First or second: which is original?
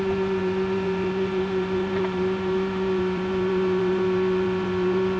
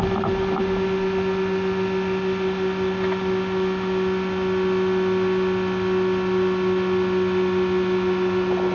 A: second